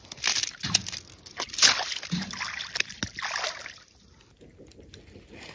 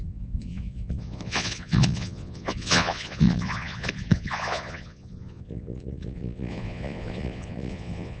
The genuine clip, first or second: first